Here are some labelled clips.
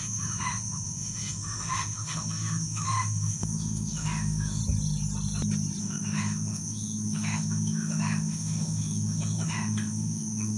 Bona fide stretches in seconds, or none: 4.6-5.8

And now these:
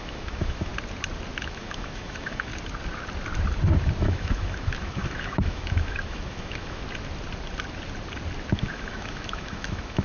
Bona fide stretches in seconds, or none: 0.7-1.4; 2.5-4.0; 6.8-8.5

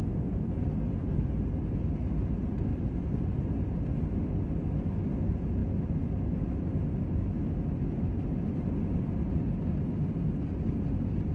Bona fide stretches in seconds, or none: 0.0-2.7; 3.4-11.3

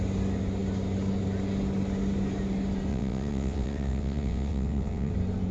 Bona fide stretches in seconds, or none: 0.0-2.9; 5.1-5.5